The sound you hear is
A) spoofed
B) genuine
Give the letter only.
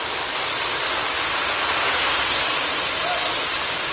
B